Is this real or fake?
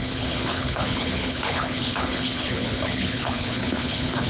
fake